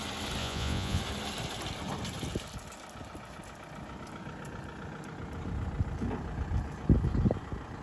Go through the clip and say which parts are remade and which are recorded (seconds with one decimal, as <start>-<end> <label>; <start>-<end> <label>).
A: 0.0-0.4 recorded; 0.4-1.0 remade; 1.0-7.8 recorded